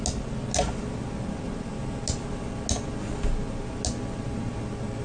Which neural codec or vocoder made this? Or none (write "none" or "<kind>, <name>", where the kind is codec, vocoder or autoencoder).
none